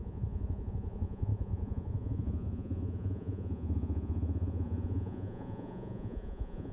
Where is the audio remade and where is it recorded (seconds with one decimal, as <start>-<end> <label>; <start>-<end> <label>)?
0.0-6.7 remade